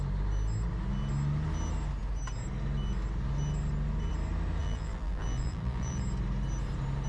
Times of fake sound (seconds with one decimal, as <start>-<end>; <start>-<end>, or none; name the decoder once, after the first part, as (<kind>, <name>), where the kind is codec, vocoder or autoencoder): 4.6-6.0 (vocoder, BigVGAN v2)